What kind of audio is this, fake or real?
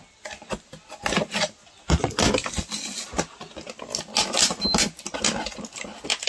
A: real